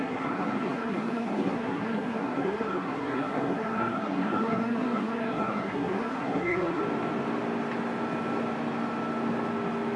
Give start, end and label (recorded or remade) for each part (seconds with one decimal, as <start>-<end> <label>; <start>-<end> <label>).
0.0-6.8 remade; 6.8-10.0 recorded